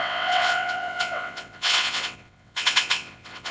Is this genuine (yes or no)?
no